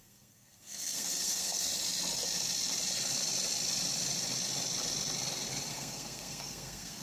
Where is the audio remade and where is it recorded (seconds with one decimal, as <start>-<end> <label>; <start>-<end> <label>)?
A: 0.0-1.7 remade; 1.7-5.7 recorded; 5.7-7.0 remade